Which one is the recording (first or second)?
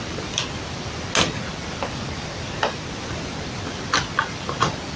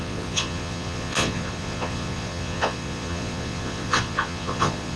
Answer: first